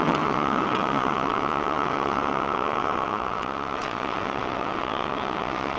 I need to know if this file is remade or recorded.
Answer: remade